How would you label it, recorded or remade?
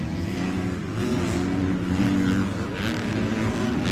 recorded